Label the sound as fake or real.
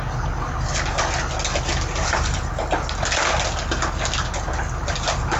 real